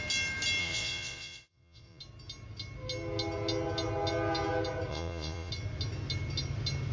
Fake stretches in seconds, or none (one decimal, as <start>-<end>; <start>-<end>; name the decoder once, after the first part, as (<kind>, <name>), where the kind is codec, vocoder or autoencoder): 0.6-2.0 (vocoder, Vocos); 4.9-5.5